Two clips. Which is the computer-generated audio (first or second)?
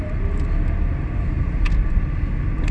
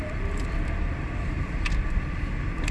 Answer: second